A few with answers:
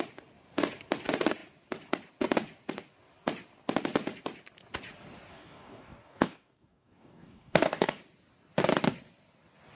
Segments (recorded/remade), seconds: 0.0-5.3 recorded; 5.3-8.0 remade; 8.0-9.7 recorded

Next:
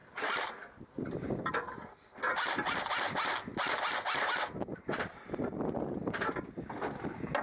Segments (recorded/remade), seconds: 0.0-1.5 remade; 1.5-4.7 recorded; 4.7-5.5 remade; 5.5-7.4 recorded

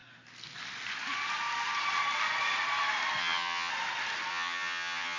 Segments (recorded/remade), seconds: 0.0-3.2 recorded; 3.2-3.7 remade; 3.7-4.3 recorded; 4.3-5.2 remade